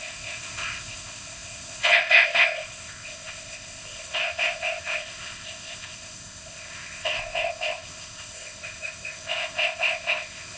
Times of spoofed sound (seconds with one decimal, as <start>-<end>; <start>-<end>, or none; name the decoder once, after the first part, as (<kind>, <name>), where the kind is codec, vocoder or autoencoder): 0.0-10.6 (codec, ZipCodec)

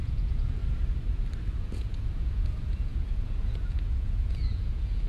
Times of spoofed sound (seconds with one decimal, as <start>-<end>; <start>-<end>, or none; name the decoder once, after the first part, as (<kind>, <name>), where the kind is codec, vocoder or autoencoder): 0.0-0.6 (vocoder, Vocos); 1.5-5.1

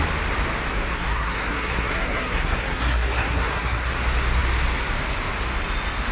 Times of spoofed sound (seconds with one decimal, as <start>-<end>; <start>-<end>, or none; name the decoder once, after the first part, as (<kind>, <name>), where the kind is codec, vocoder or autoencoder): 0.9-3.9 (codec, SNAC)

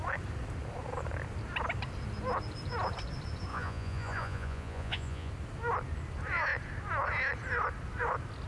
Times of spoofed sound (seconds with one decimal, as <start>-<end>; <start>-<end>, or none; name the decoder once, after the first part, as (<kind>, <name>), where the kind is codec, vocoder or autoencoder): 3.5-5.3 (vocoder, Vocos)

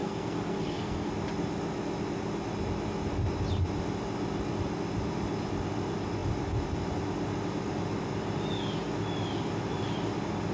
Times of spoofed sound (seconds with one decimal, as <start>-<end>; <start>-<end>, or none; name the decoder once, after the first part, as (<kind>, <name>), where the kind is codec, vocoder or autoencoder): 0.0-1.1 (codec, SNAC)

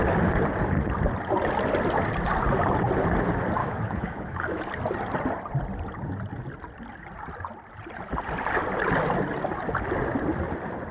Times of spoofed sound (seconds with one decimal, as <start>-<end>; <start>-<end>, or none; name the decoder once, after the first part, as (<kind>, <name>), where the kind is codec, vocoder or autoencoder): 3.6-4.6 (autoencoder, DAC-VAE)

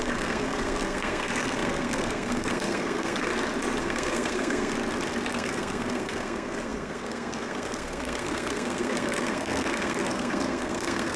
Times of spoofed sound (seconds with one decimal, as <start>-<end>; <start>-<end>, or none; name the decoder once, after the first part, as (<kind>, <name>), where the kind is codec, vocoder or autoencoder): 0.0-3.3 (codec, SNAC); 3.8-4.7; 5.3-11.2